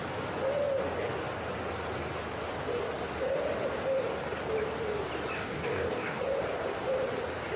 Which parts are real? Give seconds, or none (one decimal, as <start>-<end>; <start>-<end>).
0.0-5.4; 6.2-7.6